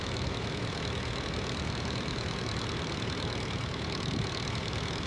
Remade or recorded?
remade